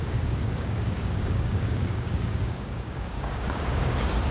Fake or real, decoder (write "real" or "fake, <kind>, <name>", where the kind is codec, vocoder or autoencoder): fake, codec, DAC